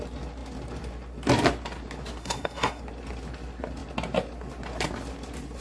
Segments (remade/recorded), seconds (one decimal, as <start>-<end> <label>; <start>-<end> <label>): 0.0-2.2 recorded; 2.2-2.8 remade; 2.8-5.6 recorded